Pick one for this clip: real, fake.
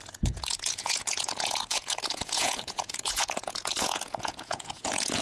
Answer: fake